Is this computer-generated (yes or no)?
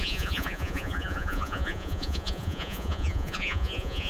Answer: yes